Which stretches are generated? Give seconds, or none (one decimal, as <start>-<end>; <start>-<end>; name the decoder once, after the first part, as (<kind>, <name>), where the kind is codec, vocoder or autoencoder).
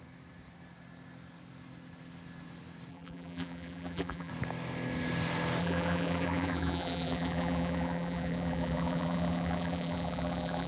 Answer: 2.9-4.3 (vocoder, BigVGAN v2); 5.6-10.7